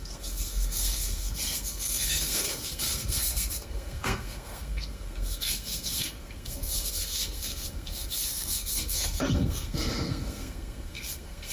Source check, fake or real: fake